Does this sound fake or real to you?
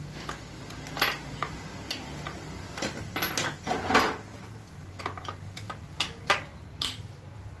real